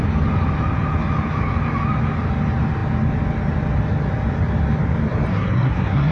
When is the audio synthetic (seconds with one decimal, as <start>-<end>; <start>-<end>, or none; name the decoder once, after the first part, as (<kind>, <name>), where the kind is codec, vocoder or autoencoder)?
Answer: 5.3-6.1 (codec, SNAC)